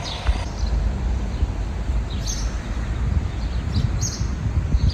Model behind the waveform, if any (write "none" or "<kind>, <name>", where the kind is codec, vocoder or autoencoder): none